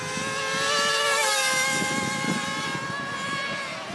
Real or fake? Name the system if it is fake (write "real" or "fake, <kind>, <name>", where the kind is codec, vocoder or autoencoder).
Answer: real